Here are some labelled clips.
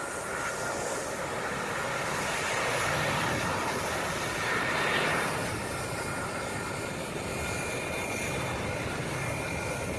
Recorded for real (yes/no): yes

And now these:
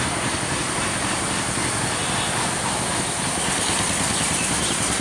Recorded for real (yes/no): yes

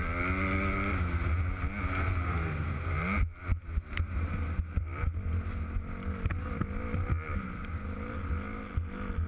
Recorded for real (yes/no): yes